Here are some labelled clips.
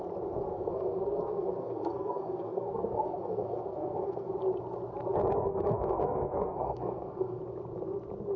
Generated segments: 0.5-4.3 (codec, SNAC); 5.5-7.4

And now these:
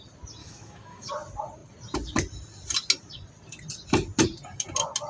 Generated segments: 0.4-1.1 (autoencoder, DAC-VAE)

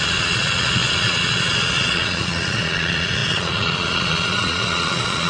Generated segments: 0.0-5.3 (vocoder, Vocos)

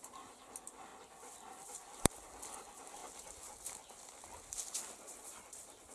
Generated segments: none

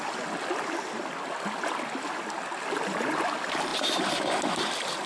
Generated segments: none

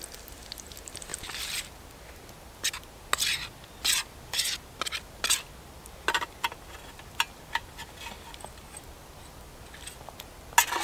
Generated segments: none

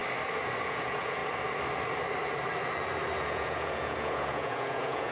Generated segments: 0.6-1.2 (vocoder, Vocos); 3.2-5.1